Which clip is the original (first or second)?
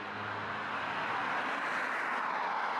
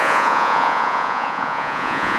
first